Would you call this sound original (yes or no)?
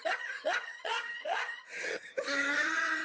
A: no